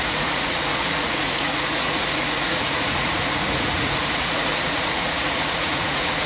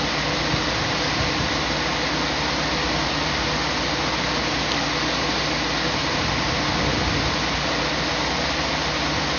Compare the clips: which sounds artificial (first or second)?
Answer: first